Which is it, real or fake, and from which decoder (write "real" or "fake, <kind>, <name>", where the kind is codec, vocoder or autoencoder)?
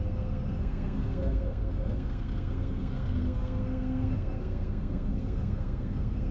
fake, codec, SNAC